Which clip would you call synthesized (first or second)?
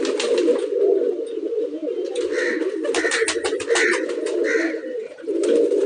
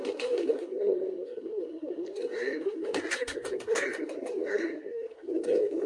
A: second